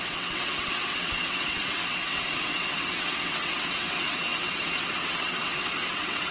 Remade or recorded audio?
remade